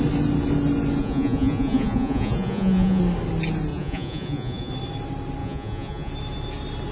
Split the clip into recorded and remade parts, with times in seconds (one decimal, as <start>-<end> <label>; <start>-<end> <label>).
0.0-1.0 recorded; 1.0-3.0 remade; 3.0-3.7 recorded; 3.7-4.7 remade; 4.7-5.4 recorded; 5.4-6.1 remade; 6.1-6.9 recorded